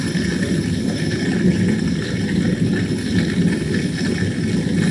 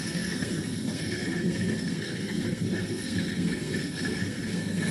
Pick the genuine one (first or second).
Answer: first